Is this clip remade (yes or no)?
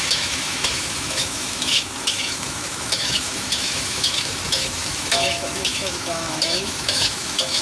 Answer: yes